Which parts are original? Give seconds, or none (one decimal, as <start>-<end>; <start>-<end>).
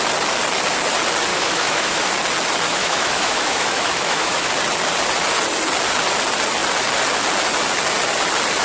0.0-1.3; 2.1-2.7; 4.5-8.6